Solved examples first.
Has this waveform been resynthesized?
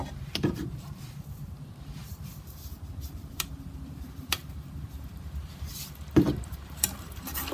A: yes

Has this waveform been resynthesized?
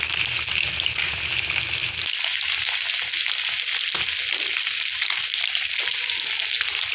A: no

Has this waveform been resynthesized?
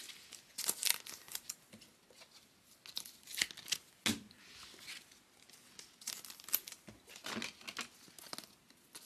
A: no